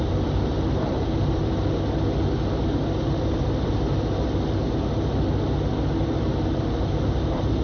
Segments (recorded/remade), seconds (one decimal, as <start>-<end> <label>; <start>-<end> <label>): 0.0-1.4 remade; 1.4-6.0 recorded; 6.0-7.6 remade